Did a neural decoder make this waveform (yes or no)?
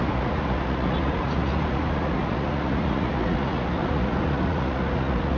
yes